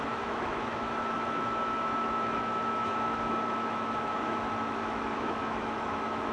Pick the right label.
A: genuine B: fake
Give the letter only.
B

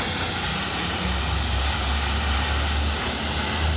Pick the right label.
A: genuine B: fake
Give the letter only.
A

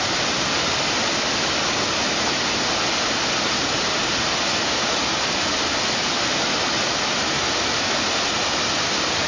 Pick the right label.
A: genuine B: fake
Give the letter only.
A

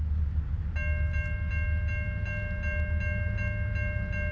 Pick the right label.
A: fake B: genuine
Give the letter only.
B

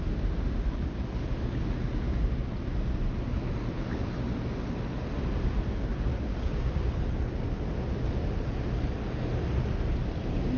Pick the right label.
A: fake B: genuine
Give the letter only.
B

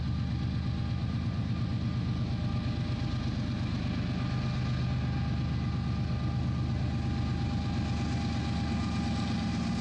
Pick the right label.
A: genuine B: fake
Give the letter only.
A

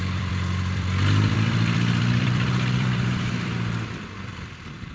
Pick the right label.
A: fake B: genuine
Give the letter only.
A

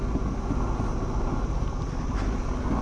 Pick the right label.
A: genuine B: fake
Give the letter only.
A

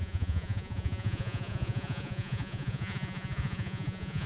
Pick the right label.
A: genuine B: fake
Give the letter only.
B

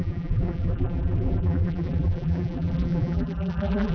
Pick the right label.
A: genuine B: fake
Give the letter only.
B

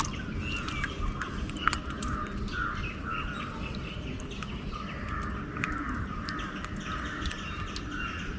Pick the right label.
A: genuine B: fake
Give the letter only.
A